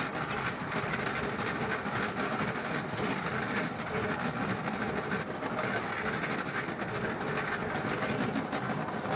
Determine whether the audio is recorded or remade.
recorded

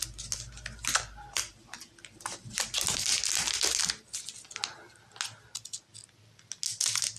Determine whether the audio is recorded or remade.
recorded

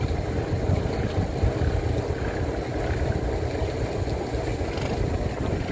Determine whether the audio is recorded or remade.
recorded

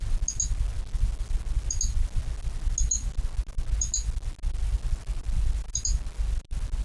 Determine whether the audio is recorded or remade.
recorded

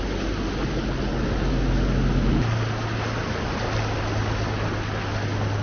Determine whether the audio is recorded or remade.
recorded